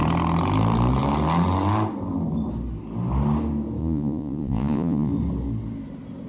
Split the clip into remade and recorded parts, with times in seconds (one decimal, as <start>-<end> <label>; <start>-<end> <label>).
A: 0.0-3.8 recorded; 3.8-5.1 remade; 5.1-6.3 recorded